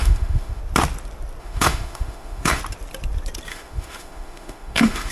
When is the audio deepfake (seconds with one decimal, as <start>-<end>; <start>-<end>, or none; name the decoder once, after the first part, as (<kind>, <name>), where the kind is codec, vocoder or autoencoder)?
0.0-0.6 (autoencoder, DAC-VAE); 1.4-2.6; 3.5-5.1